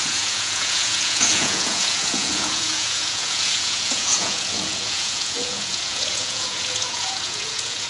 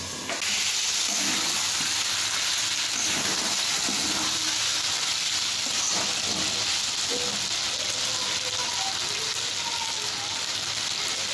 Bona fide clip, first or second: second